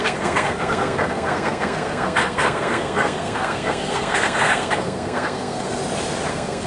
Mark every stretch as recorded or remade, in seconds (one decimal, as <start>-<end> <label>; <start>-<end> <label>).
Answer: 0.0-5.8 remade; 5.8-6.3 recorded; 6.3-6.7 remade